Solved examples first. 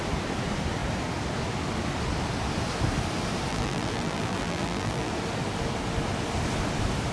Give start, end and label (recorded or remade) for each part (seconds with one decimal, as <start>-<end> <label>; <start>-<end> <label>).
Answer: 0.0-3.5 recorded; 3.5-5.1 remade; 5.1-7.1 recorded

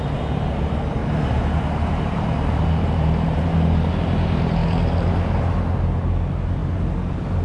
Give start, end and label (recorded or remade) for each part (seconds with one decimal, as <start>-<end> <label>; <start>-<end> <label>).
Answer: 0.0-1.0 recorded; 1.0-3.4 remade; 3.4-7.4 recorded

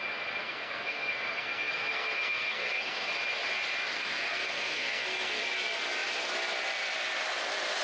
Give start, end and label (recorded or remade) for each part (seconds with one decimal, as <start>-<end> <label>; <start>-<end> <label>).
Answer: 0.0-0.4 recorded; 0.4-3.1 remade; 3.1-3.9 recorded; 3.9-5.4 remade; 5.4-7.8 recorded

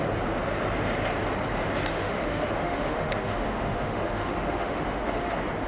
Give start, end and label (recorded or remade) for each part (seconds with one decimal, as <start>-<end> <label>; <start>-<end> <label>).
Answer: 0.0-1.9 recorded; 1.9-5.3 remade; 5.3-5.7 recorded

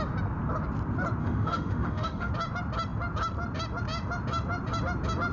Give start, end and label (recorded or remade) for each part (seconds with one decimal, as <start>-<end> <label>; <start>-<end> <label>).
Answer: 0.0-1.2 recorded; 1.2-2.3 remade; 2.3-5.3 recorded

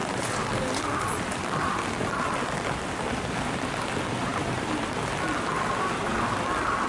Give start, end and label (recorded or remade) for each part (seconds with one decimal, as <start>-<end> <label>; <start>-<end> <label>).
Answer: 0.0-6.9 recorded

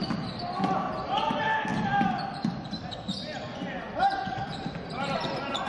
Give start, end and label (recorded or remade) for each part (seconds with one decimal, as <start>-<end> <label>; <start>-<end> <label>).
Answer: 0.0-5.7 recorded